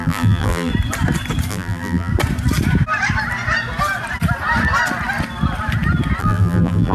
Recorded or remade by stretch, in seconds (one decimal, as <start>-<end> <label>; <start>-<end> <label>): 0.0-0.7 remade; 0.7-1.5 recorded; 1.5-2.1 remade; 2.1-6.2 recorded; 6.2-6.9 remade

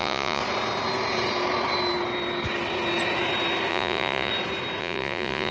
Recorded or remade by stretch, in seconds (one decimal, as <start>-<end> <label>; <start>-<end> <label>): 0.0-0.4 remade; 0.4-3.7 recorded; 3.7-4.3 remade; 4.3-4.8 recorded; 4.8-5.5 remade

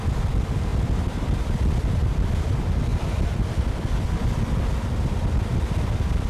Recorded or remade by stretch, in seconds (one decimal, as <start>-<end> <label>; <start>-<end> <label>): 0.0-6.3 remade

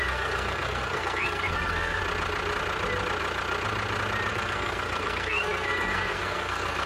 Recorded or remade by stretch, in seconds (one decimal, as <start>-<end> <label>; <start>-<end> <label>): 0.0-2.0 remade; 2.0-4.3 recorded; 4.3-6.9 remade